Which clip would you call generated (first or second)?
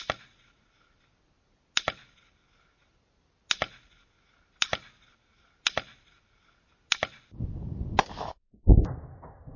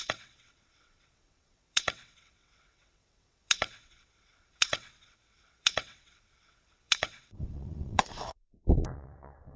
second